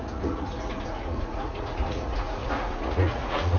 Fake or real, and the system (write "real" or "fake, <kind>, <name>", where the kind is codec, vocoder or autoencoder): fake, vocoder, Vocos